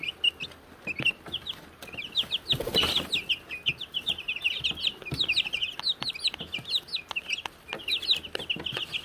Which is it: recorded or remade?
recorded